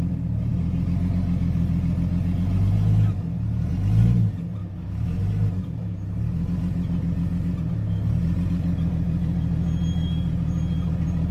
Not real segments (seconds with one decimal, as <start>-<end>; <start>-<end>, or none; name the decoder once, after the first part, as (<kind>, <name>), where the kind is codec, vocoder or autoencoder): 4.6-5.2 (autoencoder, DAC-VAE)